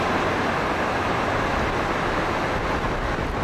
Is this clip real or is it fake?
real